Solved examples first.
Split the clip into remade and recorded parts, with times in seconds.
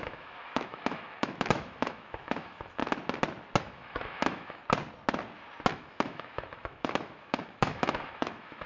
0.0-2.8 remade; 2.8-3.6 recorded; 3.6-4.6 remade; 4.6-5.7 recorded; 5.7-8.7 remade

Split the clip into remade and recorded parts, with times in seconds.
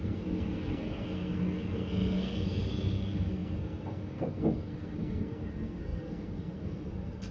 0.0-7.3 remade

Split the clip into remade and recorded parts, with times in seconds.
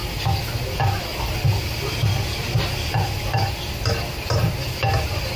0.0-5.4 recorded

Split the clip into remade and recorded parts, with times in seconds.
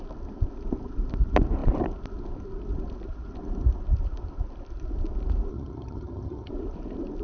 0.0-5.5 recorded; 5.5-6.5 remade; 6.5-7.2 recorded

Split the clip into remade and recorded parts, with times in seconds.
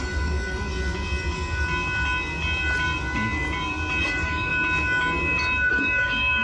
0.0-0.7 remade; 0.7-4.0 recorded; 4.0-4.5 remade; 4.5-5.7 recorded; 5.7-6.4 remade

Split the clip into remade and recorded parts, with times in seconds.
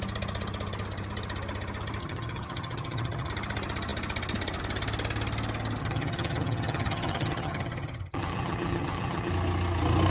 0.0-2.0 recorded; 2.0-3.3 remade; 3.3-5.8 recorded; 5.8-9.3 remade; 9.3-10.1 recorded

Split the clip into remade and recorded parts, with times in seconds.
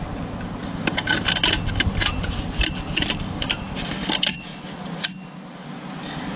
0.0-6.4 recorded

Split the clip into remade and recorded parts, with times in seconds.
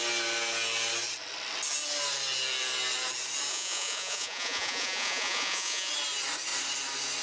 0.0-3.5 recorded; 3.5-5.9 remade; 5.9-7.2 recorded